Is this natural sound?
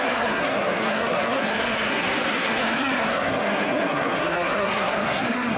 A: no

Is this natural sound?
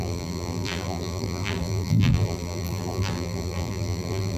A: no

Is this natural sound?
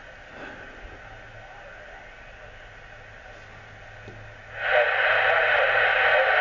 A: yes